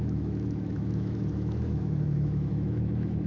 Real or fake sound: fake